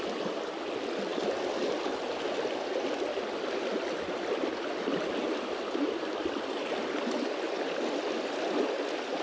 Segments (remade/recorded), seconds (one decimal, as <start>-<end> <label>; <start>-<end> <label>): 0.0-9.2 recorded